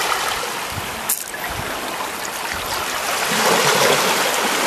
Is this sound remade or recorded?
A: recorded